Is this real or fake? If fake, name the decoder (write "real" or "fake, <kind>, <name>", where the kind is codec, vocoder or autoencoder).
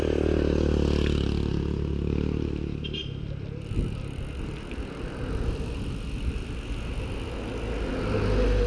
real